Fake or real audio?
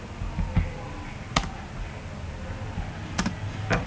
real